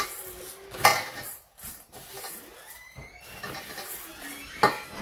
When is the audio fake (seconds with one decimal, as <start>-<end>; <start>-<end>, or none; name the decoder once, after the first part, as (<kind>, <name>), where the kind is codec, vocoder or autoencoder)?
none